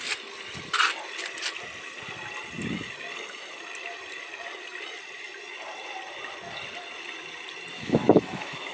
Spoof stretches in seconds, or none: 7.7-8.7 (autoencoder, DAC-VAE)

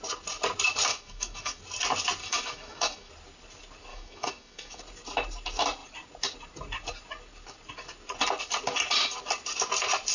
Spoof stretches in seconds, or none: 0.9-1.6 (autoencoder, DAC-VAE); 2.2-3.1; 3.9-4.8

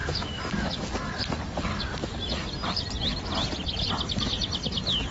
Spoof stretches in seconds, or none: 0.0-0.8 (autoencoder, DAC-VAE)

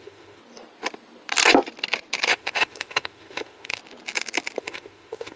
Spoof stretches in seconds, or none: 0.0-0.4 (autoencoder, DAC-VAE); 2.3-3.8; 4.6-5.4